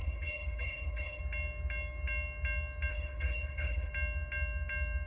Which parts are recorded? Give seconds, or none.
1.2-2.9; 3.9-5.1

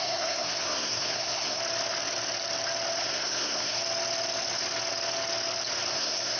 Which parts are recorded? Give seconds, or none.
1.6-3.0; 3.8-5.9

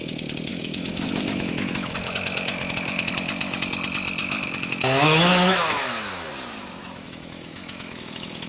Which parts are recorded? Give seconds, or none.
0.0-0.5; 3.1-4.2; 6.3-6.8

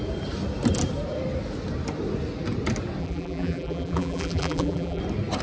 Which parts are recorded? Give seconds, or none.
0.0-3.0; 5.0-5.4

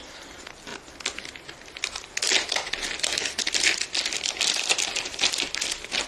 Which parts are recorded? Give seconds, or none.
0.0-6.1

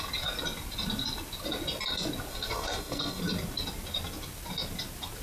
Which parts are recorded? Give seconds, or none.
0.0-2.3; 3.2-5.2